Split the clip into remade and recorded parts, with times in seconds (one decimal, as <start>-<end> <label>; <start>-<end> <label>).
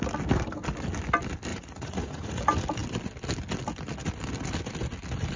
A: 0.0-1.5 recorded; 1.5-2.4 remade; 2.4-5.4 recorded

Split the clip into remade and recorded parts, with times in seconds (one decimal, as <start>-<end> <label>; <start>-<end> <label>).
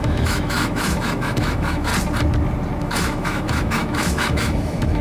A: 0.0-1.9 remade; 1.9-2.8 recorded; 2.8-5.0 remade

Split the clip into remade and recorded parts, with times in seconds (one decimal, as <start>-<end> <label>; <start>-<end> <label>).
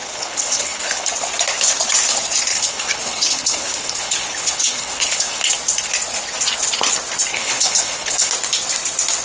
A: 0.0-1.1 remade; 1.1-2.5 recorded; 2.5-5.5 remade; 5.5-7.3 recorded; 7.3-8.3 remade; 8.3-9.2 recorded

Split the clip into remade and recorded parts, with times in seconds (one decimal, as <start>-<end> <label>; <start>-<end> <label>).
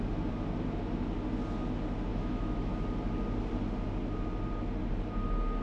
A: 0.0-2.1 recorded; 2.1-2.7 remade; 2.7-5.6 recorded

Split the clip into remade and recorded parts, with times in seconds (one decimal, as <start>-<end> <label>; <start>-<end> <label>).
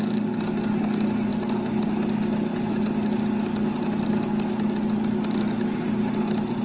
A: 0.0-6.6 recorded